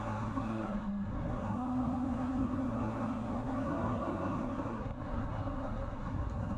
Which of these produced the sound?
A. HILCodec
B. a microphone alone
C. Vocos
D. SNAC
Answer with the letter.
D